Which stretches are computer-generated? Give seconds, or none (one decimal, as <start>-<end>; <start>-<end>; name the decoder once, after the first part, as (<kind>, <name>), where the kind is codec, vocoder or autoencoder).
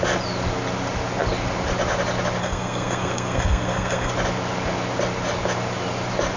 2.4-4.1 (codec, SNAC)